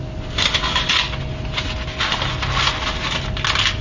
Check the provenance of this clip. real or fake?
real